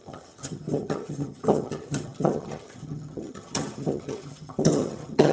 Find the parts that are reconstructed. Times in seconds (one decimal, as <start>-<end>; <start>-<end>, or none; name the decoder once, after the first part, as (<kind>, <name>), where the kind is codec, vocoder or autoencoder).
0.0-5.3 (vocoder, HiFi-GAN)